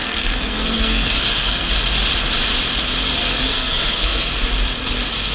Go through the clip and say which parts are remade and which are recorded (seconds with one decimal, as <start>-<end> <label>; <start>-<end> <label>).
0.0-1.7 remade; 1.7-3.2 recorded; 3.2-4.3 remade; 4.3-5.3 recorded